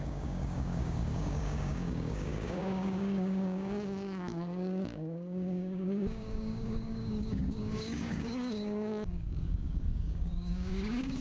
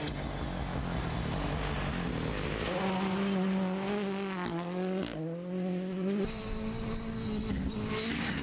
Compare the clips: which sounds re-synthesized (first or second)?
first